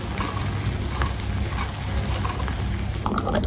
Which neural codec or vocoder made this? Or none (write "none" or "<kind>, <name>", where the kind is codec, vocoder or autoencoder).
none